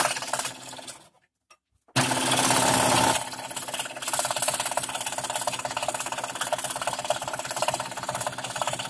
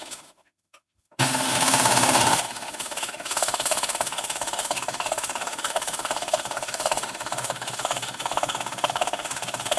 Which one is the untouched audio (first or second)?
first